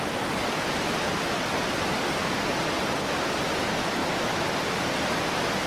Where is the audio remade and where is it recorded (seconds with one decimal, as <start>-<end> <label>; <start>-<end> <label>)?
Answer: 0.0-4.0 recorded; 4.0-5.7 remade